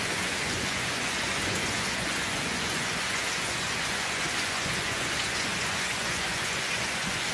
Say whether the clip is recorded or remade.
remade